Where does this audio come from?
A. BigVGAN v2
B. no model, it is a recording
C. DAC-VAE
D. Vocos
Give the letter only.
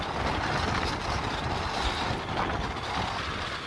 B